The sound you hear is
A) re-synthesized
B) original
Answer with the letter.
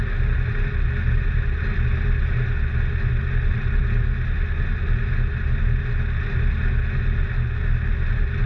B